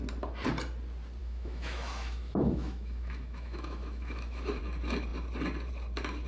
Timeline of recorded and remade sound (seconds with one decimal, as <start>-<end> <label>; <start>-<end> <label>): 0.0-1.2 recorded; 1.2-4.6 remade; 4.6-6.3 recorded